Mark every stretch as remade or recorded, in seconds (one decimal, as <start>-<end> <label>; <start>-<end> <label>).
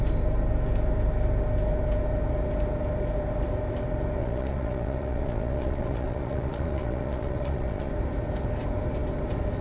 0.0-4.2 recorded; 4.2-7.9 remade; 7.9-9.6 recorded